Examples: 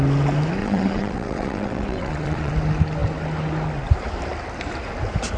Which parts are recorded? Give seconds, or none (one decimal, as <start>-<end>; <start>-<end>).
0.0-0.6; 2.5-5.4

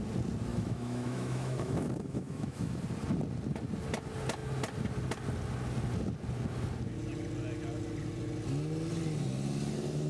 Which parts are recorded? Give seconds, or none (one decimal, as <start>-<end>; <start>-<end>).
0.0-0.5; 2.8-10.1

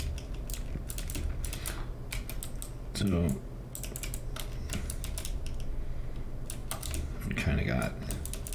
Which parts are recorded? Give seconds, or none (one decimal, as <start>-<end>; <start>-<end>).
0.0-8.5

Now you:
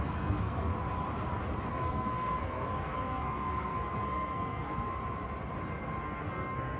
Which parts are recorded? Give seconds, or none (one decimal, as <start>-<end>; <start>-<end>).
0.7-1.7; 5.0-6.0

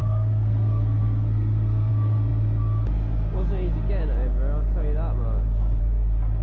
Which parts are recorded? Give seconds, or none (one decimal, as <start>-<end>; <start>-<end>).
1.9-6.4

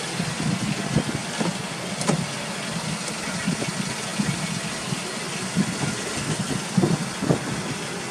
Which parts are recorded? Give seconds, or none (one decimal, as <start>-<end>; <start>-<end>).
0.0-8.1

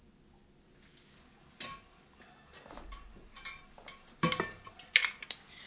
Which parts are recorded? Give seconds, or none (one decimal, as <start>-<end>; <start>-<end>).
0.0-5.7

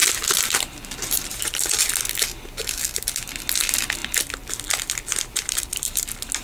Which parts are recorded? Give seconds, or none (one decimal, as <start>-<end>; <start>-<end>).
1.8-4.0; 5.9-6.4